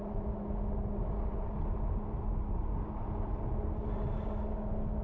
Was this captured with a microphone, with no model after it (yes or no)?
yes